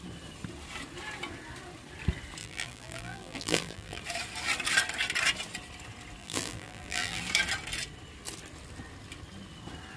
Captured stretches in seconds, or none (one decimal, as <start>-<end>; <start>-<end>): 0.0-2.4; 4.0-6.2; 7.2-10.0